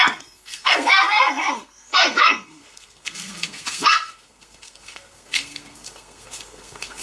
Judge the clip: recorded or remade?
remade